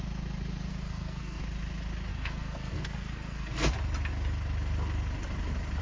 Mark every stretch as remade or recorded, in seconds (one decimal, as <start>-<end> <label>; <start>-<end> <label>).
0.0-0.7 recorded; 0.7-1.4 remade; 1.4-2.1 recorded; 2.1-3.7 remade; 3.7-5.8 recorded